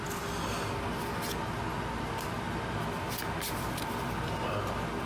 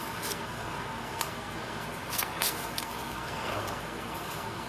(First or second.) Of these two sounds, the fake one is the second